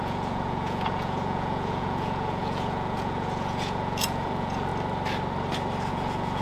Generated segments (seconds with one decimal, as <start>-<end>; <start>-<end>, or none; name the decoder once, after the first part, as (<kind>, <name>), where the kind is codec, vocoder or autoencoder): 0.0-4.7 (vocoder, Vocos); 5.9-6.4